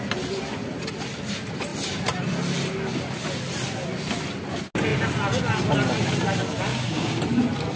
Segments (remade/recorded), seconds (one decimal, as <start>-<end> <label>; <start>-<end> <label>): 0.0-6.7 recorded; 6.7-7.2 remade; 7.2-7.8 recorded